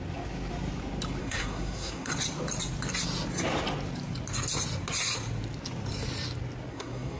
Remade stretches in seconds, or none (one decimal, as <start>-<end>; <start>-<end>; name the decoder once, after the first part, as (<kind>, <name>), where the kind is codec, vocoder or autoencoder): 1.2-2.1 (codec, SNAC); 6.7-7.2